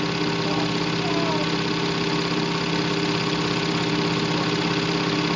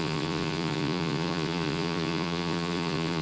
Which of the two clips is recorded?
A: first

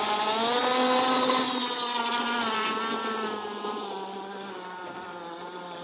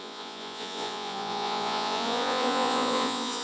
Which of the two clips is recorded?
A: first